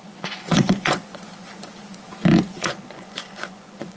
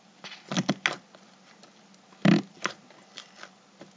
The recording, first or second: second